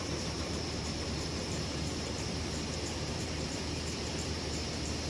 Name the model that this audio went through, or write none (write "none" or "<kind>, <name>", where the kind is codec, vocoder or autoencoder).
vocoder, BigVGAN v2